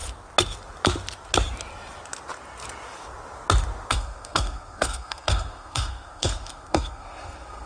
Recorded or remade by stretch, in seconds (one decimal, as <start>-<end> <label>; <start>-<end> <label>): 0.0-3.9 recorded; 3.9-7.7 remade